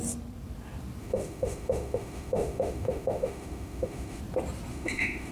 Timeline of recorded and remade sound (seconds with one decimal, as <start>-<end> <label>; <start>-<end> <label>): 0.0-1.0 recorded; 1.0-4.2 remade; 4.2-4.7 recorded; 4.7-5.3 remade